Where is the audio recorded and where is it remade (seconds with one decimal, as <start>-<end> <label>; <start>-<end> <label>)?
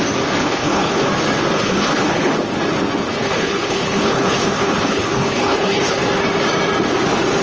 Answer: 0.0-0.4 recorded; 0.4-1.1 remade; 1.1-1.5 recorded; 1.5-2.3 remade; 2.3-3.1 recorded; 3.1-6.0 remade; 6.0-7.4 recorded